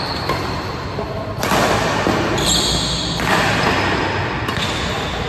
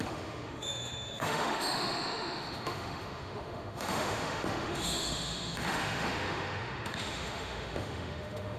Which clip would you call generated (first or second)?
second